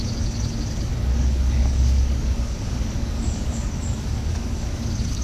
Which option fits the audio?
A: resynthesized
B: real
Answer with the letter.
A